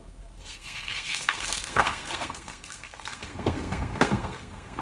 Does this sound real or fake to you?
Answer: fake